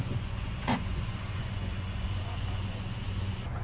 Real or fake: fake